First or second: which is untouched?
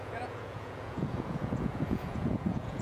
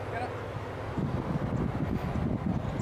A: second